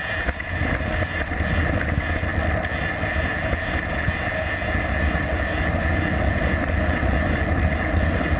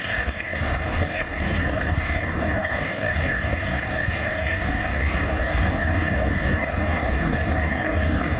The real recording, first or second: first